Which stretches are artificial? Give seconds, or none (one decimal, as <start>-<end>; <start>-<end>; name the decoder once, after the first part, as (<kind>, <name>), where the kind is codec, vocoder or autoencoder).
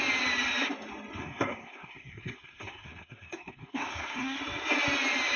1.2-4.4 (codec, SNAC)